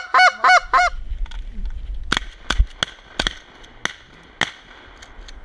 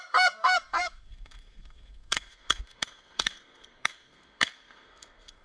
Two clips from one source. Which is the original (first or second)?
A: first